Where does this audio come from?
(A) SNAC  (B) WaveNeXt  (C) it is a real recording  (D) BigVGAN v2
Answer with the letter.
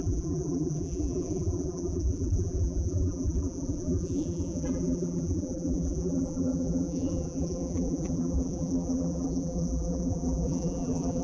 D